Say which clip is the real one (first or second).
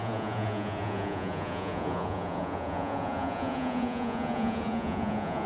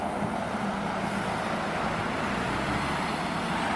second